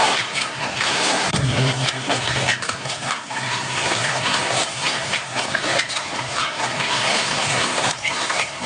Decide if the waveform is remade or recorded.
remade